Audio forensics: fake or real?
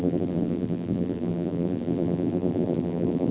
fake